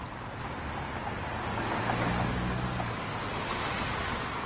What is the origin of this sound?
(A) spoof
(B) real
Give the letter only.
B